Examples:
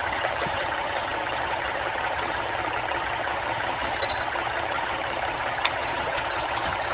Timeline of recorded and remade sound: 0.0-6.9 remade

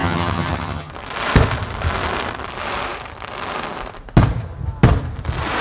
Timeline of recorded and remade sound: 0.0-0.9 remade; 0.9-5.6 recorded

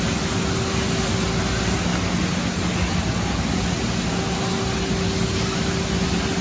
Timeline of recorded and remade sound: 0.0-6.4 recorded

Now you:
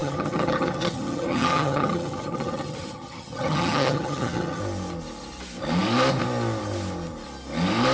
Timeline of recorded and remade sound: 0.0-4.6 remade; 4.6-7.9 recorded

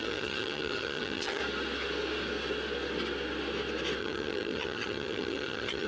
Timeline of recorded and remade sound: 0.0-1.4 remade; 1.4-4.0 recorded; 4.0-5.9 remade

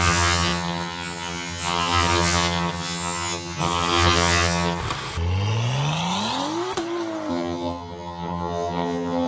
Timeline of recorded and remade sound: 0.0-4.8 remade; 4.8-7.3 recorded; 7.3-9.3 remade

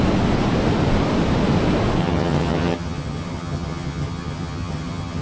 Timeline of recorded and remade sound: 0.0-2.0 recorded; 2.0-5.2 remade

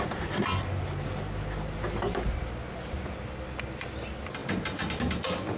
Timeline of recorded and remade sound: 0.0-5.6 recorded